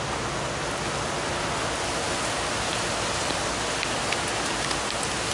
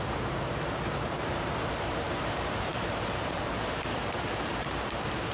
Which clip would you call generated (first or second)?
second